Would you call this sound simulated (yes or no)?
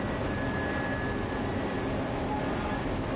no